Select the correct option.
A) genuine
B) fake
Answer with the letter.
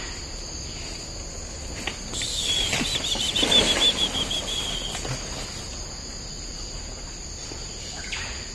A